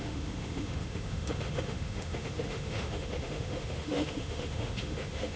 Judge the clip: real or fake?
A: fake